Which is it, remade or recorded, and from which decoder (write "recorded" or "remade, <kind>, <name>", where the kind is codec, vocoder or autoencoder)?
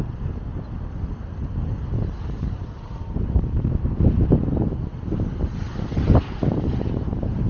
recorded